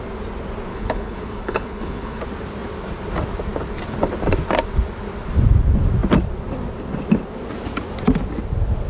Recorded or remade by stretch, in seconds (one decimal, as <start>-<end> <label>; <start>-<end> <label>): 0.0-0.7 recorded; 0.7-2.2 remade; 2.2-8.9 recorded